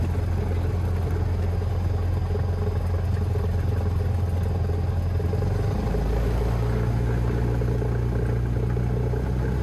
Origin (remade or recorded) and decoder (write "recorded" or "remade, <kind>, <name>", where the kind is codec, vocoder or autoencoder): recorded